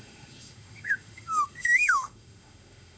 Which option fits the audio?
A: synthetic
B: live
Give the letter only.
A